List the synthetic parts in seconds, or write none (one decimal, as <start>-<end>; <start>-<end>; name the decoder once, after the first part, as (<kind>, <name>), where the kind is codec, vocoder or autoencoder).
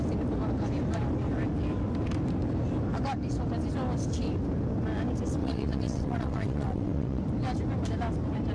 5.4-7.2 (vocoder, WaveNeXt)